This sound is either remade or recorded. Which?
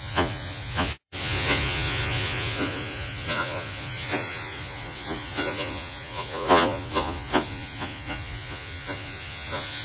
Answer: remade